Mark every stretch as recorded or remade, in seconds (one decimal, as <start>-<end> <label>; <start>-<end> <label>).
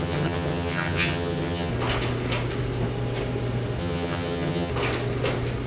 0.0-1.7 remade; 1.7-3.8 recorded; 3.8-4.7 remade; 4.7-5.7 recorded